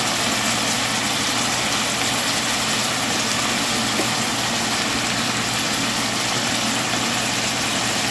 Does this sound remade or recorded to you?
recorded